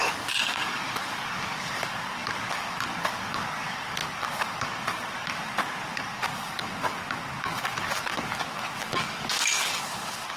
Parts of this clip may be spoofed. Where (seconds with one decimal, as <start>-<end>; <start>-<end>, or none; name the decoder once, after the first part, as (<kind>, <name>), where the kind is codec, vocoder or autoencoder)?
0.0-10.4 (codec, DAC)